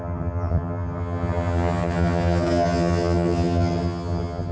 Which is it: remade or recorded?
remade